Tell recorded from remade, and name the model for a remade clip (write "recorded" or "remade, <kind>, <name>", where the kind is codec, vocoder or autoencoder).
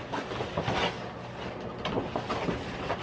recorded